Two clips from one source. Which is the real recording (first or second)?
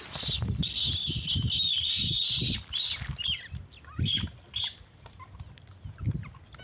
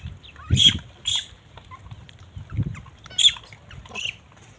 first